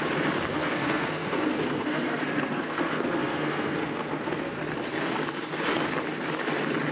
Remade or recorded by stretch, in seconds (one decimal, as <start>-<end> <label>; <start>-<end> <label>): 0.0-0.5 recorded; 0.5-4.6 remade; 4.6-6.9 recorded